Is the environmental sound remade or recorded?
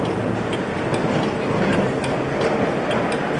recorded